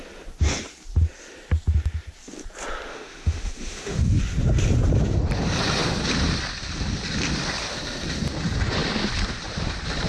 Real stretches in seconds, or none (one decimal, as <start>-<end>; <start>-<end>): 0.0-2.9; 4.2-10.1